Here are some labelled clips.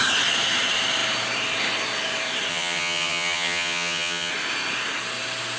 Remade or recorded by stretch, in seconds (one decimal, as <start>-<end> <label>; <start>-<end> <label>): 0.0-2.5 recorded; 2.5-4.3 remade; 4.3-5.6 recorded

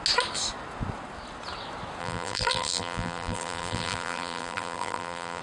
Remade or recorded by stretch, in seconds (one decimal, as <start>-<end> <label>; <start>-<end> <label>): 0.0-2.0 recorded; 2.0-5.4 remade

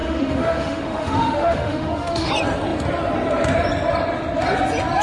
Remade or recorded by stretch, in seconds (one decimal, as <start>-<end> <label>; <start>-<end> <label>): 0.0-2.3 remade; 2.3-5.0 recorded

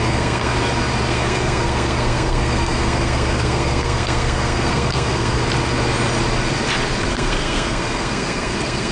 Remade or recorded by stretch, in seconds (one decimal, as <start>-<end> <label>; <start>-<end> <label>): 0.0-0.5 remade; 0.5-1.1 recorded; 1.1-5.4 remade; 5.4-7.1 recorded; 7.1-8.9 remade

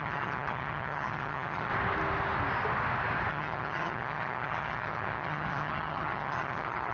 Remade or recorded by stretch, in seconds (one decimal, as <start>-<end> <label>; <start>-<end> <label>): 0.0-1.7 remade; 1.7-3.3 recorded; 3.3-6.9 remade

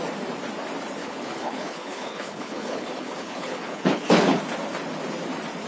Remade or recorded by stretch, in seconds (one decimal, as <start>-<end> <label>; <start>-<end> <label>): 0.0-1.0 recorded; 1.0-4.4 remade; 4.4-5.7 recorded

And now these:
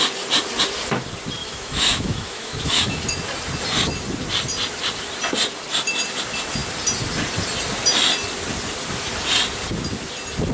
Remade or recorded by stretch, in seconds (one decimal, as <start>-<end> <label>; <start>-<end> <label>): 0.0-1.4 recorded; 1.4-3.0 remade; 3.0-10.5 recorded